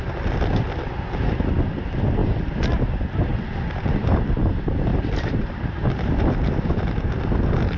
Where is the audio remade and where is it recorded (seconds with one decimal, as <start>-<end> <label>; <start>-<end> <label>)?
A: 0.0-4.9 recorded; 4.9-7.2 remade; 7.2-7.8 recorded